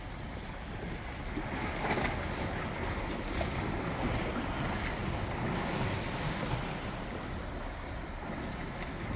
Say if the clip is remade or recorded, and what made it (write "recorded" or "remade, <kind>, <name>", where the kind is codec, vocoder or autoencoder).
recorded